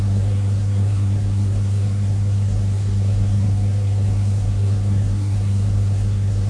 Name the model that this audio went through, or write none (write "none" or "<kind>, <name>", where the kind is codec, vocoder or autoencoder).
codec, SNAC